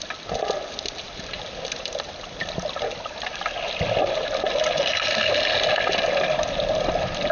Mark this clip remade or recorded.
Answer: recorded